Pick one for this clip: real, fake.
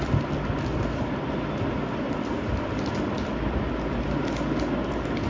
real